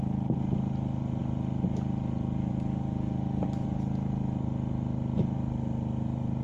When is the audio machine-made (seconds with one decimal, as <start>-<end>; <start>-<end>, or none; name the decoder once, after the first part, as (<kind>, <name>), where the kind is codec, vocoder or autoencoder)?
none